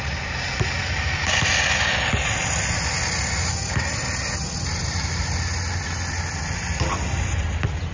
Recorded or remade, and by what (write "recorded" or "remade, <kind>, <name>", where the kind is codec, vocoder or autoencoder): recorded